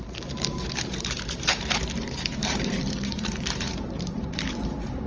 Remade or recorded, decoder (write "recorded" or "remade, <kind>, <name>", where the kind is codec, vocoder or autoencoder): remade, vocoder, BigVGAN v2